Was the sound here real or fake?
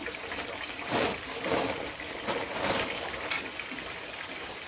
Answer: real